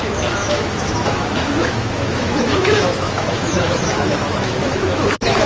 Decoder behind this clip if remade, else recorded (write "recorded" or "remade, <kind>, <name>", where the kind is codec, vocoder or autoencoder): remade, autoencoder, DAC-VAE